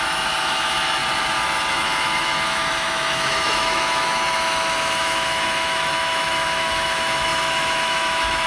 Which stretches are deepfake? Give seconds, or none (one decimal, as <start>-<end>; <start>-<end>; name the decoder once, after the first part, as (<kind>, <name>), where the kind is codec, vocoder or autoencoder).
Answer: 0.0-1.0 (autoencoder, DAC-VAE); 1.7-8.5